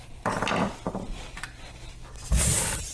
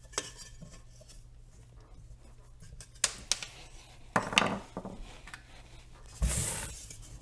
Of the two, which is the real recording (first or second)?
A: second